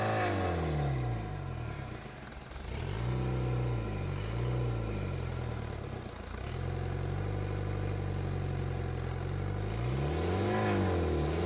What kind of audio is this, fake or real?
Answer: real